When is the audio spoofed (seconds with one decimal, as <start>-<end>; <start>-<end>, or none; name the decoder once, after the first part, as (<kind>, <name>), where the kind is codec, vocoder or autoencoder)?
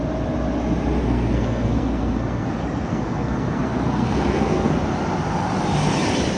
1.0-2.5 (codec, SNAC); 2.9-4.7